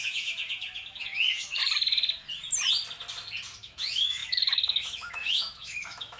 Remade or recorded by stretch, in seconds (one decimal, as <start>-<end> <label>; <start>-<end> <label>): 0.0-1.6 remade; 1.6-3.6 recorded; 3.6-6.2 remade